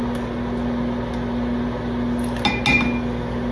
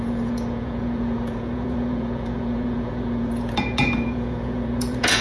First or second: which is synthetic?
second